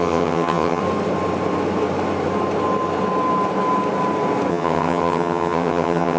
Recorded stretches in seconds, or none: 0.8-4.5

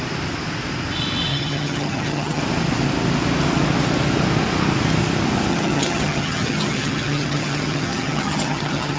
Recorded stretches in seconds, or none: 0.0-1.3; 2.4-5.5

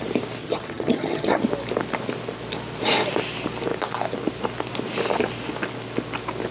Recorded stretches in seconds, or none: 0.0-0.4; 1.4-6.5

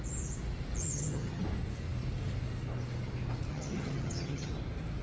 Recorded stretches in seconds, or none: 0.0-0.8; 1.4-3.5; 4.5-5.0